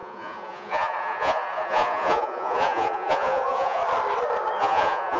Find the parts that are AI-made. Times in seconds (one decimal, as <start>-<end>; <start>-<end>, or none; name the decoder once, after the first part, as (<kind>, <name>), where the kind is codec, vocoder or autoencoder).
0.0-3.8 (vocoder, Vocos); 4.6-5.2